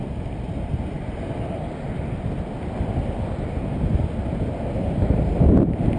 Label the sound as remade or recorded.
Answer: recorded